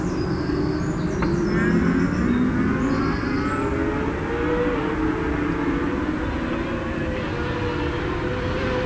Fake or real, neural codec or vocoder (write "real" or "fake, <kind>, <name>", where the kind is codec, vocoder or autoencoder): real